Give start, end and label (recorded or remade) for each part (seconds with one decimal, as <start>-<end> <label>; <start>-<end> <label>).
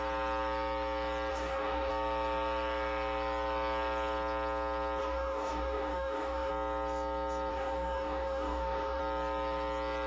0.0-1.3 recorded; 1.3-1.9 remade; 1.9-5.0 recorded; 5.0-6.5 remade; 6.5-7.5 recorded; 7.5-9.0 remade; 9.0-10.1 recorded